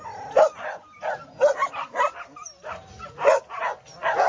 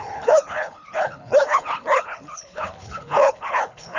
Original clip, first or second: first